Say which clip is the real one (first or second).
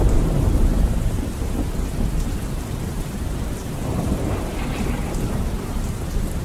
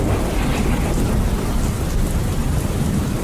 second